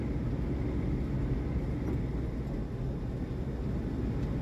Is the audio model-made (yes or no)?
no